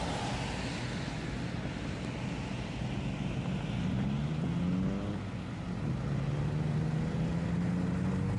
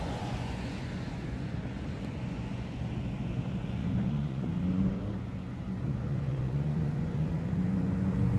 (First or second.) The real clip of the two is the first